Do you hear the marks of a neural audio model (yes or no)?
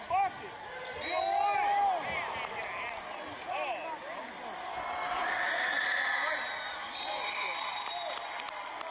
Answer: no